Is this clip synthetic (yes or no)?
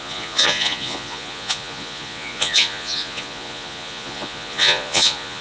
yes